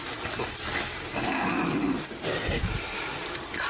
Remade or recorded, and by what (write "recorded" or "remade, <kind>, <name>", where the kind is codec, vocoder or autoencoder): recorded